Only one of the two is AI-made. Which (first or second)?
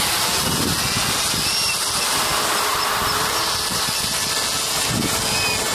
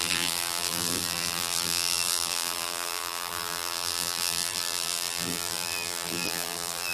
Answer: second